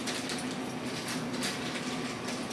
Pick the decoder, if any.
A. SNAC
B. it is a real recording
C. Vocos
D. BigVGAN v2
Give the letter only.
B